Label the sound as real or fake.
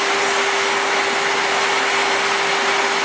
real